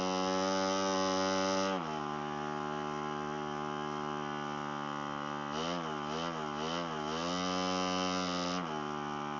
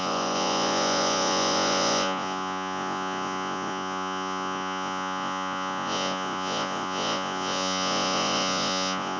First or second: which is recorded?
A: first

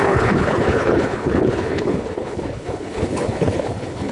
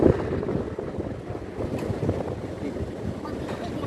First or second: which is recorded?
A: second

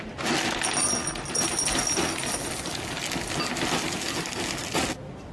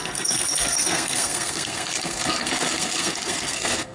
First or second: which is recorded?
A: first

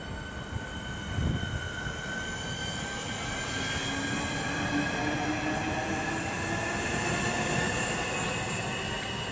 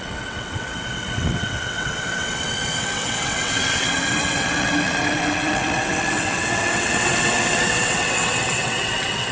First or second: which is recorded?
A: first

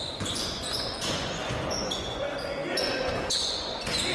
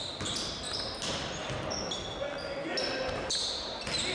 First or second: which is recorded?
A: second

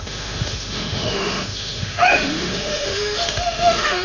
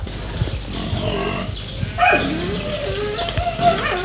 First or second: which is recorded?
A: second